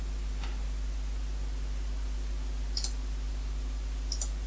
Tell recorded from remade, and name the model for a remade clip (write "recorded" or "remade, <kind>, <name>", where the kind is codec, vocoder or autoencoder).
recorded